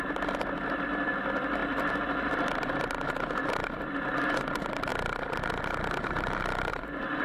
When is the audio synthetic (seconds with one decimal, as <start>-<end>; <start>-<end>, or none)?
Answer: none